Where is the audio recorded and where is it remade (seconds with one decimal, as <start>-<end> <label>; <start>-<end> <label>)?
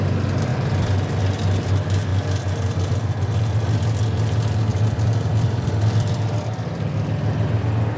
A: 0.0-0.5 recorded; 0.5-1.2 remade; 1.2-2.1 recorded; 2.1-2.9 remade; 2.9-4.7 recorded; 4.7-6.4 remade; 6.4-8.0 recorded